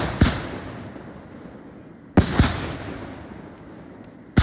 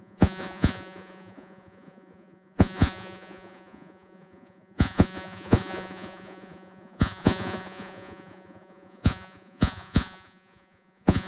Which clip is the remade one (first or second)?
second